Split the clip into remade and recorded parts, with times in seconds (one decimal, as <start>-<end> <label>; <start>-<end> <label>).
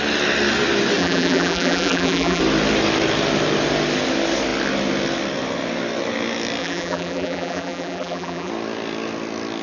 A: 0.0-1.0 recorded; 1.0-2.4 remade; 2.4-6.6 recorded; 6.6-8.5 remade; 8.5-9.6 recorded